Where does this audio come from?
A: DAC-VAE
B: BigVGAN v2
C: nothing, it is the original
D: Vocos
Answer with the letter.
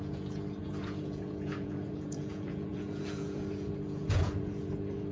D